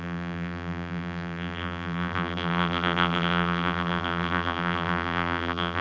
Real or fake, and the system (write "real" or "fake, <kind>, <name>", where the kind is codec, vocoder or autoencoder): fake, vocoder, BigVGAN v2